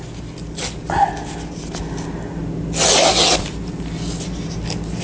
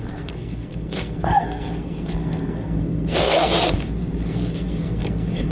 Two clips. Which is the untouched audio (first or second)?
first